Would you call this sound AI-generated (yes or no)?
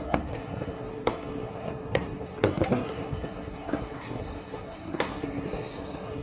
yes